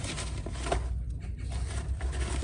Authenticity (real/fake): real